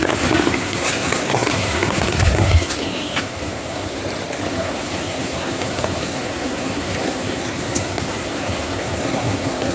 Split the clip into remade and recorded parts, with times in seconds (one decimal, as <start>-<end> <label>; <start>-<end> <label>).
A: 0.0-4.0 remade; 4.0-4.5 recorded; 4.5-9.7 remade